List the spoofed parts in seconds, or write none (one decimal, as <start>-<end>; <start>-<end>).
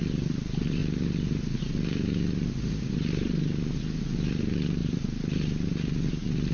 none